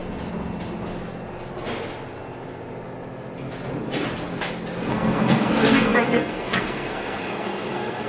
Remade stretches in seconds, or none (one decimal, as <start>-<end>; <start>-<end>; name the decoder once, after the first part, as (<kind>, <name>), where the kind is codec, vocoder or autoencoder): 4.9-8.1 (codec, SNAC)